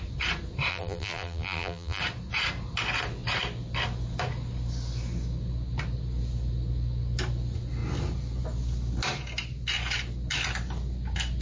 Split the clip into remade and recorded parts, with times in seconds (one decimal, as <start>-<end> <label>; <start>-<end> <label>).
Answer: 0.0-0.7 recorded; 0.7-2.0 remade; 2.0-11.4 recorded